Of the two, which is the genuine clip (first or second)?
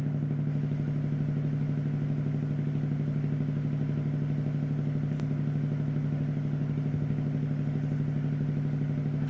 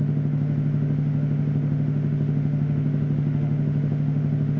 first